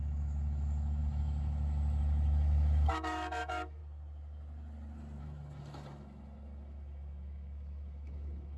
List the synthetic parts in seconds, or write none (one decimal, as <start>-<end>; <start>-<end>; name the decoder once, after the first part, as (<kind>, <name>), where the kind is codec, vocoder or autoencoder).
0.0-3.8 (autoencoder, DAC-VAE); 5.2-8.6